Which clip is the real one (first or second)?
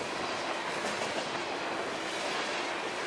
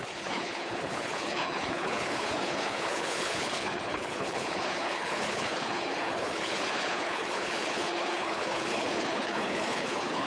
first